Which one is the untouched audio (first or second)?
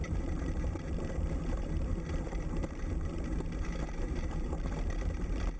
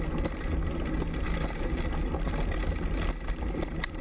second